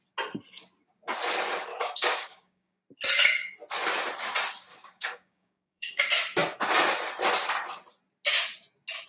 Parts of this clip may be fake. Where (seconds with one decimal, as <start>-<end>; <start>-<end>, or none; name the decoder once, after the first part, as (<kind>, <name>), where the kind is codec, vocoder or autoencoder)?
1.7-2.8 (codec, DAC); 4.7-6.0